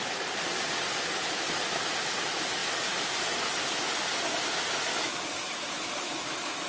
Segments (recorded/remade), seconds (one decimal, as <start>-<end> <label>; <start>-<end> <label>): 0.0-4.9 recorded; 4.9-6.7 remade